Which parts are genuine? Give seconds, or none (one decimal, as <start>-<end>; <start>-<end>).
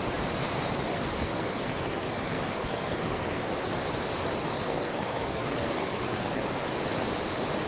0.0-0.9; 3.4-4.5; 6.5-7.7